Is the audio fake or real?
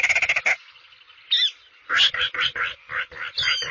real